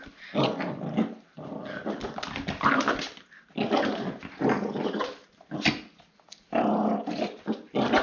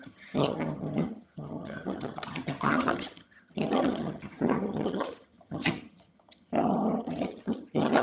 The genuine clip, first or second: first